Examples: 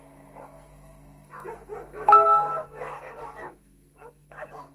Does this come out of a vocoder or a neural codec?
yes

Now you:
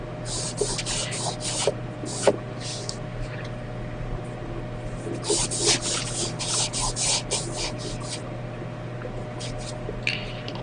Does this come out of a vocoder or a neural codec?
no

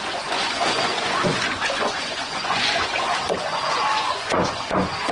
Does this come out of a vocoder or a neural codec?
yes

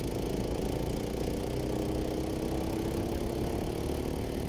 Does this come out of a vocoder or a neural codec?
no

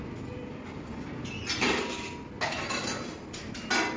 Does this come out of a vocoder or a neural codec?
no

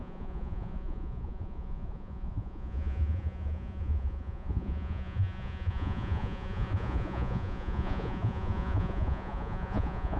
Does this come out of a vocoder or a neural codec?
yes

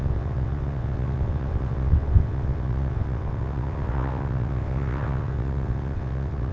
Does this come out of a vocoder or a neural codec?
yes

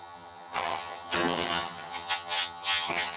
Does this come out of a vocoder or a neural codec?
yes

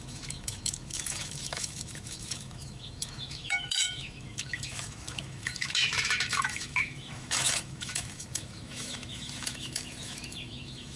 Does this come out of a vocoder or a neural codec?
yes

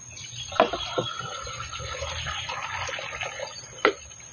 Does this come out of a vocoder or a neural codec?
no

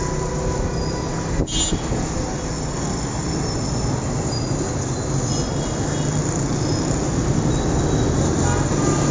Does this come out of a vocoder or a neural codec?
no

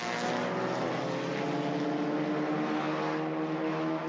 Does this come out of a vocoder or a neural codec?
no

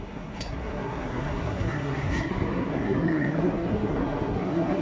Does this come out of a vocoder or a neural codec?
yes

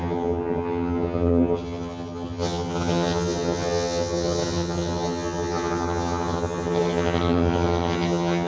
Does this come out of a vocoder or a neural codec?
yes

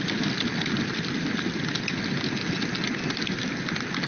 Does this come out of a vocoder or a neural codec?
no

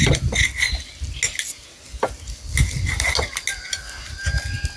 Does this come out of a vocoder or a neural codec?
no